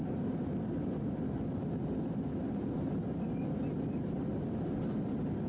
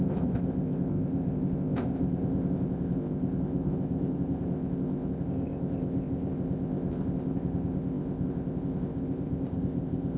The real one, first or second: first